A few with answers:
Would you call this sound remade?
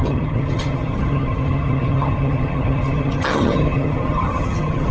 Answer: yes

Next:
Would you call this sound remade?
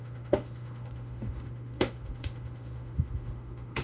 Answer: yes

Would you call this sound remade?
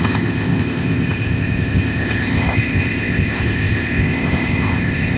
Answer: yes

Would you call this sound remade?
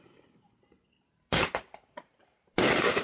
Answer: yes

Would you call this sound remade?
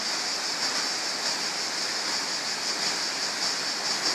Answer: no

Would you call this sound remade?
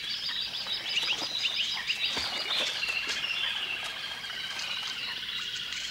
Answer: no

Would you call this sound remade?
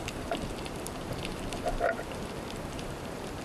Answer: yes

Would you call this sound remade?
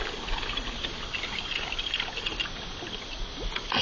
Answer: no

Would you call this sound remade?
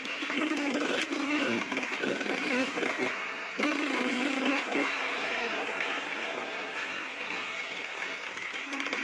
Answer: yes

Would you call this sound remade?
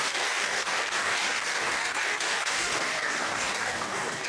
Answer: yes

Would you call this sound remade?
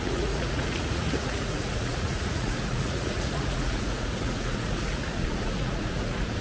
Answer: yes